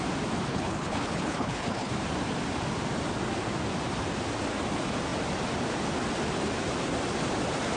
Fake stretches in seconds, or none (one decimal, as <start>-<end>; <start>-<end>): 0.5-1.9